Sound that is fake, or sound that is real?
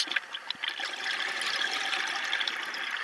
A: real